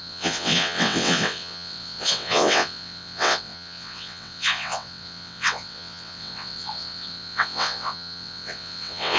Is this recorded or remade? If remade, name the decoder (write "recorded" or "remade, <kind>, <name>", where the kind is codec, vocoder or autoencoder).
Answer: remade, vocoder, WaveNeXt